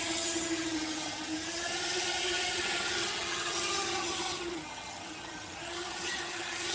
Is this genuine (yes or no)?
no